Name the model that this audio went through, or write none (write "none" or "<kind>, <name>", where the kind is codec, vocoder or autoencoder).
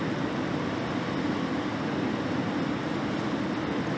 none